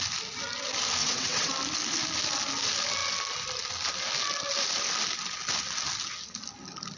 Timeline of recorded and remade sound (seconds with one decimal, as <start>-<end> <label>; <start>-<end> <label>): 0.0-1.0 recorded; 1.0-1.5 remade; 1.5-7.0 recorded